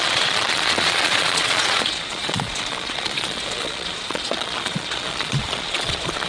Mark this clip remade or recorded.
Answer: remade